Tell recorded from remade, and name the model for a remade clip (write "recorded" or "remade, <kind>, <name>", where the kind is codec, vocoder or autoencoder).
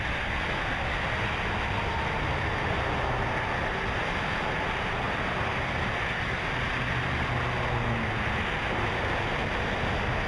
recorded